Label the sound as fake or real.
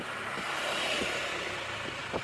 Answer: real